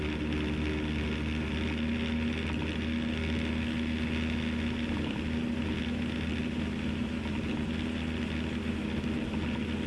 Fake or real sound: real